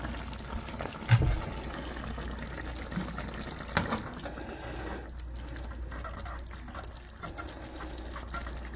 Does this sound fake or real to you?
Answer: real